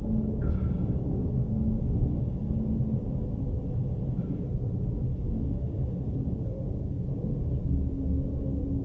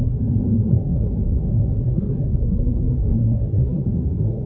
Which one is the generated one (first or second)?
second